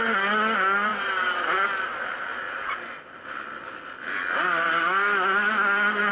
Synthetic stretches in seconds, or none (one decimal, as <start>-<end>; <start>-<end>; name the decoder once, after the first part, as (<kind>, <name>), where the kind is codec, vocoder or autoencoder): none